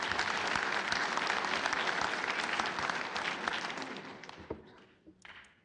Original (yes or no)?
yes